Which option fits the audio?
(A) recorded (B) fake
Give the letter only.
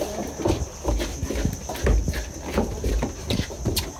A